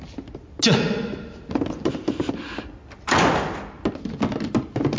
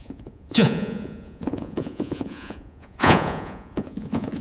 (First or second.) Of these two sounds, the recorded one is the first